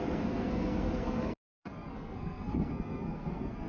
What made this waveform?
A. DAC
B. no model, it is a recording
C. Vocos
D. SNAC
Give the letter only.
D